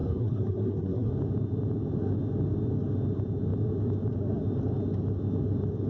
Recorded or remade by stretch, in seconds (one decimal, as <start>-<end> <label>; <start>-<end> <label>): 0.0-1.1 remade; 1.1-5.9 recorded

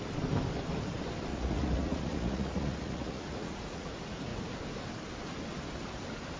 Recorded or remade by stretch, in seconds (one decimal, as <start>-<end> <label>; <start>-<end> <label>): 0.0-1.3 recorded; 1.3-3.9 remade; 3.9-6.4 recorded

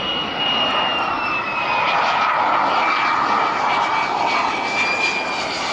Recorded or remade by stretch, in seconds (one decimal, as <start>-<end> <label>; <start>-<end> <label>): 0.0-5.7 recorded

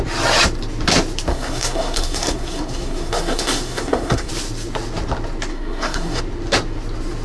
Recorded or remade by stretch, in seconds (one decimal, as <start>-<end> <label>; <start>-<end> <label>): 0.0-1.3 recorded; 1.3-4.3 remade; 4.3-5.5 recorded; 5.5-6.2 remade; 6.2-7.2 recorded

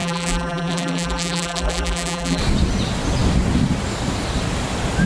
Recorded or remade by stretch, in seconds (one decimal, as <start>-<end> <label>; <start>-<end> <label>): 0.0-2.4 remade; 2.4-5.1 recorded

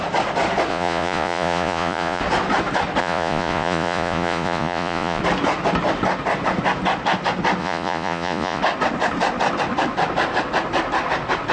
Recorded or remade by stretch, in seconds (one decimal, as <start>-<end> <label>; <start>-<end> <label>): 0.0-0.7 recorded; 0.7-2.2 remade; 2.2-3.0 recorded; 3.0-5.2 remade; 5.2-7.6 recorded; 7.6-8.6 remade; 8.6-11.5 recorded

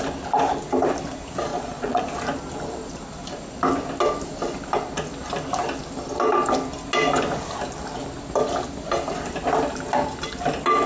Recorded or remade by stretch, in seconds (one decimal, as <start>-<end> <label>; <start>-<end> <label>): 0.0-1.5 recorded; 1.5-2.0 remade; 2.0-10.9 recorded

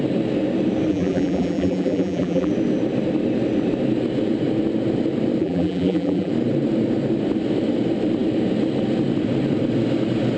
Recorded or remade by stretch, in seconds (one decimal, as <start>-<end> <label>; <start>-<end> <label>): 0.0-0.9 recorded; 0.9-2.5 remade; 2.5-5.4 recorded; 5.4-6.3 remade; 6.3-10.4 recorded